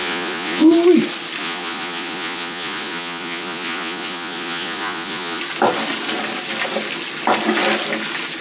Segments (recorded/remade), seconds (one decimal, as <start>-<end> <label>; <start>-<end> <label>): 0.0-0.7 remade; 0.7-1.4 recorded; 1.4-5.4 remade; 5.4-8.4 recorded